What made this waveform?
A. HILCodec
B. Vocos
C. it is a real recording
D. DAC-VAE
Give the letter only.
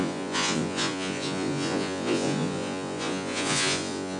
B